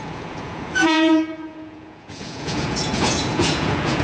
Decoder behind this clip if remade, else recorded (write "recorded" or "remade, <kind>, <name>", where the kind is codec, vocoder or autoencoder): remade, vocoder, Vocos